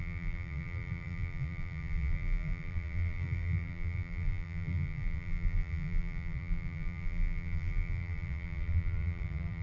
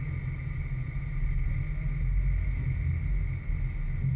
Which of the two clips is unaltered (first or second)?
second